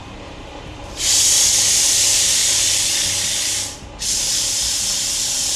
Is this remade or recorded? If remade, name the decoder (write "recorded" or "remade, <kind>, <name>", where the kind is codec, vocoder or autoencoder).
remade, vocoder, BigVGAN v2